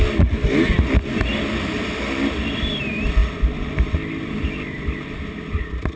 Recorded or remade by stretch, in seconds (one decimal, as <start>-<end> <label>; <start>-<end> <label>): 0.0-6.0 recorded